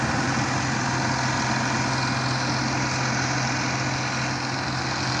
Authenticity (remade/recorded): recorded